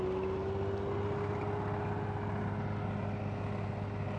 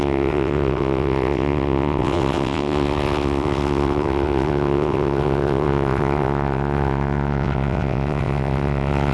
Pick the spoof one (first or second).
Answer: second